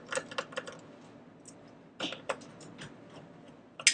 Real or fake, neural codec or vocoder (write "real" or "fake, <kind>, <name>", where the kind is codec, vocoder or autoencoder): real